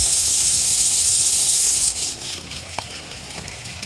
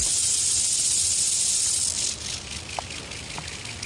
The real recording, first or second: second